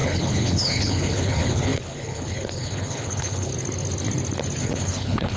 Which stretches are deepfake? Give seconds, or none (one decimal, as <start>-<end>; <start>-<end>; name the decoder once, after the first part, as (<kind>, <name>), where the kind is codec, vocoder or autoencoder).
0.0-3.5 (codec, HILCodec); 4.6-5.4